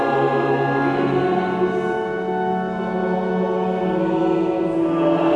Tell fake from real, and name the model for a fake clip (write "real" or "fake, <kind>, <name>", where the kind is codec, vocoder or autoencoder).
real